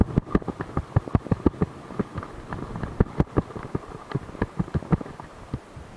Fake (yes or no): no